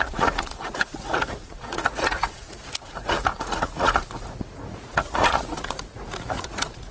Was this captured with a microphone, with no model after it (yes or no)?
no